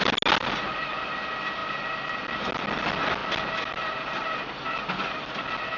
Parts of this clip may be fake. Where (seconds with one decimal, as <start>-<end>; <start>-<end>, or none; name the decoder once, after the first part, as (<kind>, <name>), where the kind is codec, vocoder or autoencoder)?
none